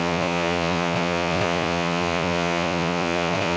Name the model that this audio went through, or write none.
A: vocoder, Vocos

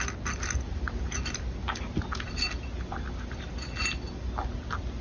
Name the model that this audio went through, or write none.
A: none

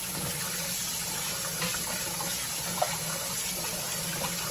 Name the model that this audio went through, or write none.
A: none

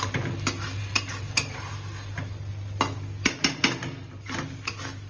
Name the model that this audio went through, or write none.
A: none